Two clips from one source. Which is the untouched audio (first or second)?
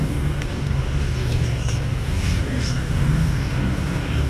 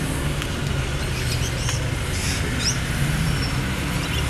second